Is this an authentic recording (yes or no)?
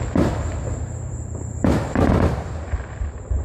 no